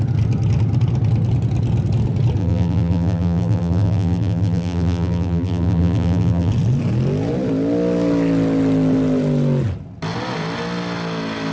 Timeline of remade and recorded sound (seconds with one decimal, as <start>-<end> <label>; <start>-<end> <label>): 0.0-2.4 recorded; 2.4-6.5 remade; 6.5-11.5 recorded